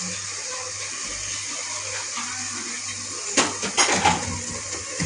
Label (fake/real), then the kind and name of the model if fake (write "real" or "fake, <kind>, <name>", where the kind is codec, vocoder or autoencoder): real